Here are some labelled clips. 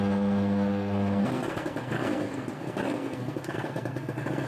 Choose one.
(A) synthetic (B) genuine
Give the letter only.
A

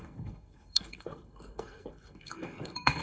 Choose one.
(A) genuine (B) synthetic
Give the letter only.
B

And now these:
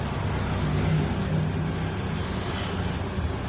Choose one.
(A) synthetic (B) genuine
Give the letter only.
B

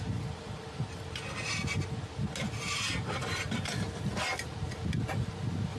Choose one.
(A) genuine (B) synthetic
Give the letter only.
A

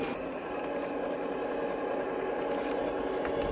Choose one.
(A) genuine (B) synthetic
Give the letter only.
A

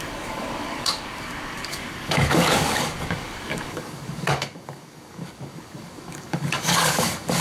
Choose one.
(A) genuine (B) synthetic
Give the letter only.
B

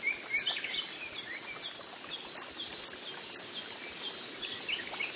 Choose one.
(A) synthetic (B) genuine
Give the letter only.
B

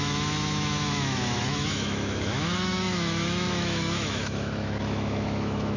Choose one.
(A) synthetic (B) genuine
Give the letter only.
A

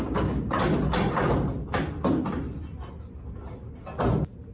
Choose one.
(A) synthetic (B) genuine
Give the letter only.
B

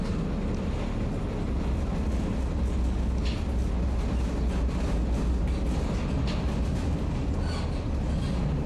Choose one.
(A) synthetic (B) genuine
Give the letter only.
B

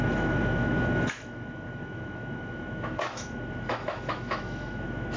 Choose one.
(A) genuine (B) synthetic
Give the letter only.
B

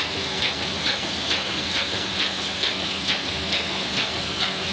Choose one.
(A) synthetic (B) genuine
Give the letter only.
A